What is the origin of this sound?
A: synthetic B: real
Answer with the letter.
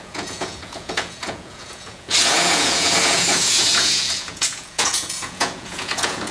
A